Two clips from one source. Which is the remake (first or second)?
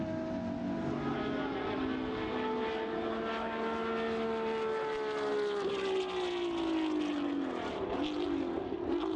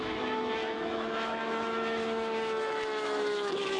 second